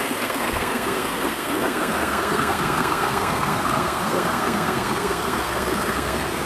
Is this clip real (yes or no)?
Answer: no